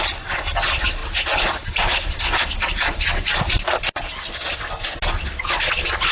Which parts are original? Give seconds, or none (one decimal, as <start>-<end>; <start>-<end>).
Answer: 0.0-6.1